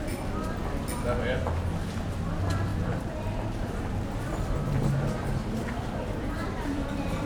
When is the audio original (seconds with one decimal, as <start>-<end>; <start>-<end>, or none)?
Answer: 0.0-2.7